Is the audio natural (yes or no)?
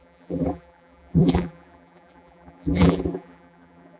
no